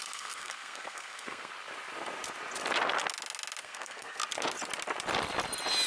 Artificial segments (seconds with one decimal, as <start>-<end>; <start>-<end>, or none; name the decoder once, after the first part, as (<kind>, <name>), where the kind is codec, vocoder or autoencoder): 0.0-1.5 (codec, SNAC); 3.6-4.2